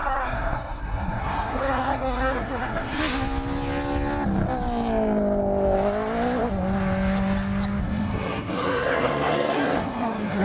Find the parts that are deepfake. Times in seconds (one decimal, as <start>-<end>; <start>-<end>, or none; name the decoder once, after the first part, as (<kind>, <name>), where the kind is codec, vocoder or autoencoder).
0.0-3.0 (codec, SNAC); 7.8-10.4